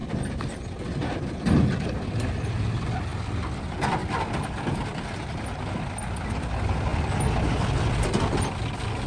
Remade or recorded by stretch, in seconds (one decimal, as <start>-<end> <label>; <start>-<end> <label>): 0.0-9.1 recorded